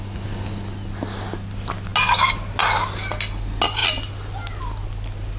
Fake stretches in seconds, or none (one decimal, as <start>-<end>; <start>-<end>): none